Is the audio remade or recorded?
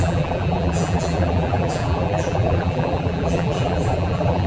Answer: remade